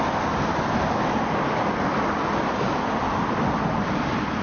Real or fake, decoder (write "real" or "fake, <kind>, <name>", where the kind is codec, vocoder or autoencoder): real